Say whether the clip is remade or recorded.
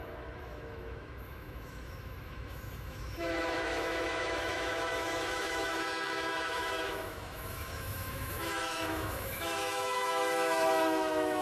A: remade